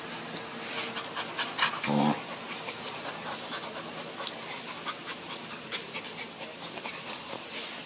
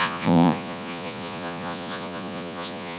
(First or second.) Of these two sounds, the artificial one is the second